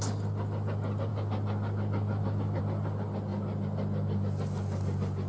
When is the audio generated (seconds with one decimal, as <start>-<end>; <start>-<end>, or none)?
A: none